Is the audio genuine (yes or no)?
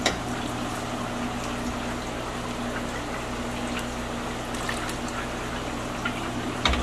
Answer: yes